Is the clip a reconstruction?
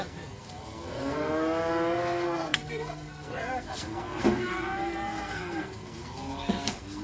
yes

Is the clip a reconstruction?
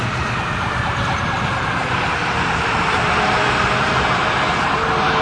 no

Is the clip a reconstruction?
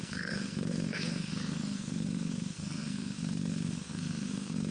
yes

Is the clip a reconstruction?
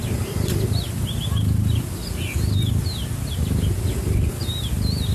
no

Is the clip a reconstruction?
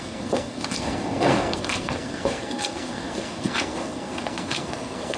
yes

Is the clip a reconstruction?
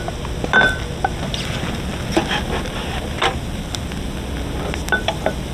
no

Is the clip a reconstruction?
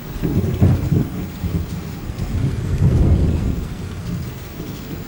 yes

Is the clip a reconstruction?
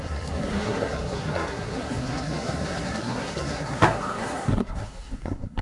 yes